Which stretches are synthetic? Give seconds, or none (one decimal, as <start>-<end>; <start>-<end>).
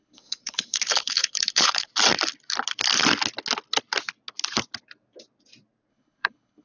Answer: 0.0-1.9; 5.9-6.6